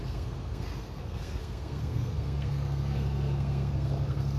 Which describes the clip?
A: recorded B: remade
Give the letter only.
B